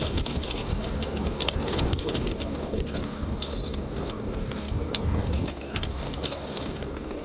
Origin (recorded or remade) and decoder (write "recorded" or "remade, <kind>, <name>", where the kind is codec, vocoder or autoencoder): remade, codec, DAC